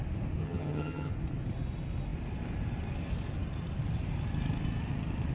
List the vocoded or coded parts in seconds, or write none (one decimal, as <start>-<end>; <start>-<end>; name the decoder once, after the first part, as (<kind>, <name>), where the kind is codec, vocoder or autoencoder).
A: 0.4-1.1 (vocoder, HiFi-GAN)